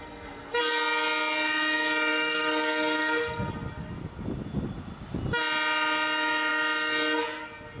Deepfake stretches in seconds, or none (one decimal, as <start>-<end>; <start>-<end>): 0.0-0.6; 2.1-3.5